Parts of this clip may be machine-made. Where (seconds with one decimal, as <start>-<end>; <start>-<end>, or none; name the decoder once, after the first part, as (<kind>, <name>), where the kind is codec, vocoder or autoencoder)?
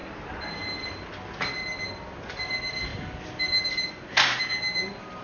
none